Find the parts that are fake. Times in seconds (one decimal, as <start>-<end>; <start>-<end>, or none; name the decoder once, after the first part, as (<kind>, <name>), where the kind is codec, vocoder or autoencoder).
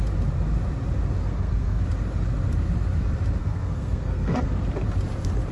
1.2-1.8 (codec, SNAC); 3.4-4.6